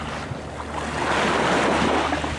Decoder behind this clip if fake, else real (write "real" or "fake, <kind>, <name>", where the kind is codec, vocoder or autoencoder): real